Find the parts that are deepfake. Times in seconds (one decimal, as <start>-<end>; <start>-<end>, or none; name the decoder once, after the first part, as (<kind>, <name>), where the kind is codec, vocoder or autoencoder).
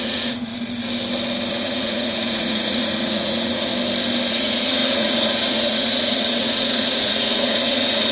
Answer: 0.0-0.5 (vocoder, Vocos); 1.5-3.7; 4.3-8.1